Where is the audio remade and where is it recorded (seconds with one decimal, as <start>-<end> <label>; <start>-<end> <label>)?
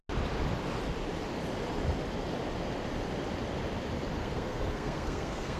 0.0-4.2 recorded; 4.2-5.6 remade